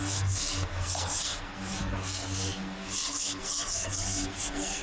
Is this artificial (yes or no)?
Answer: yes